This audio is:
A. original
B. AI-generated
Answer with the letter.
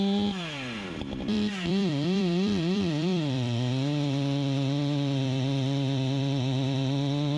B